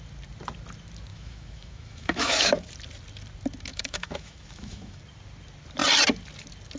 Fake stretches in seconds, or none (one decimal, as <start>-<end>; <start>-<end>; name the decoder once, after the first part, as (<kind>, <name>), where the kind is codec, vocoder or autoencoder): 1.1-2.7 (autoencoder, DAC-VAE); 3.7-5.0